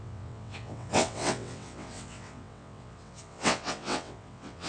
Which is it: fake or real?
fake